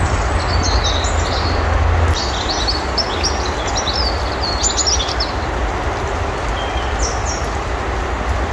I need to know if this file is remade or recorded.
recorded